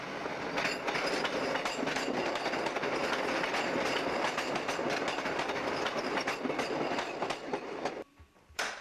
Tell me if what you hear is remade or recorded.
recorded